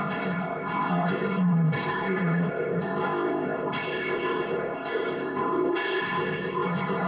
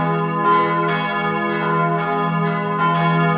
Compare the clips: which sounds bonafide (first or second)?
second